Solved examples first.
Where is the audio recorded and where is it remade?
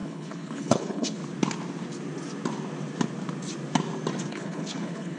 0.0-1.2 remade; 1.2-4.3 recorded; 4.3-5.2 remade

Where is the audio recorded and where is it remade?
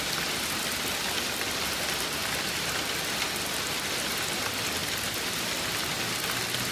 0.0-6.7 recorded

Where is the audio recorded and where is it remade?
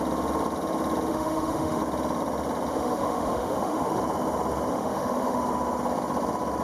0.0-1.1 recorded; 1.1-1.8 remade; 1.8-2.7 recorded; 2.7-4.0 remade; 4.0-4.7 recorded; 4.7-5.4 remade; 5.4-6.6 recorded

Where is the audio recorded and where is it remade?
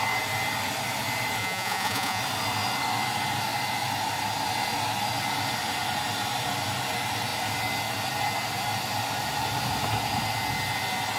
0.0-1.4 recorded; 1.4-2.2 remade; 2.2-11.2 recorded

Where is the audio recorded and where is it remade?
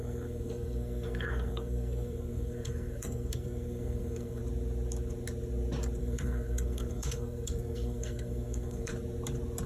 0.0-4.4 remade; 4.4-6.0 recorded; 6.0-8.9 remade; 8.9-9.7 recorded